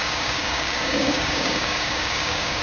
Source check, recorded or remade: remade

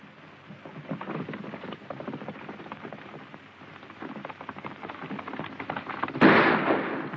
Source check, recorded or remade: recorded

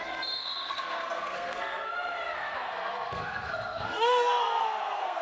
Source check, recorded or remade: remade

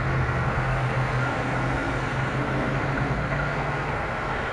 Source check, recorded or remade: remade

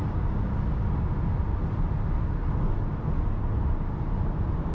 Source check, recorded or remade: recorded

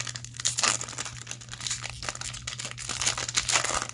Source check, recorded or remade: recorded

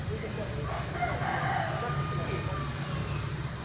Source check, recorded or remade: recorded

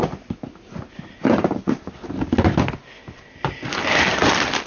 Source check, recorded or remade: recorded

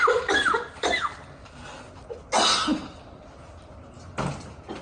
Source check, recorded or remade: recorded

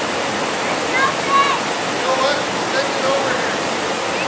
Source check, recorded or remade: recorded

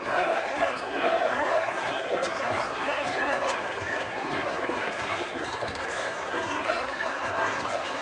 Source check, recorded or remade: remade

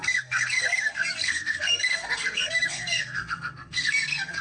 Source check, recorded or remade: remade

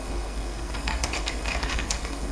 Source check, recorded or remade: remade